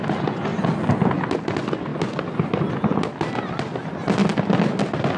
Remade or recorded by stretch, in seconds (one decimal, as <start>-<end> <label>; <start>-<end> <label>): 0.0-5.2 recorded